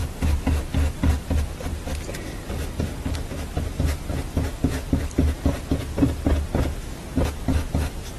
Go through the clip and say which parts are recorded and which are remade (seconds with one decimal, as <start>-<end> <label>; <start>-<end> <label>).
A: 0.0-8.2 recorded